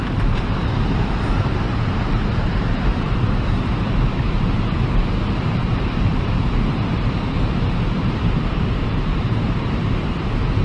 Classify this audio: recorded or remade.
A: remade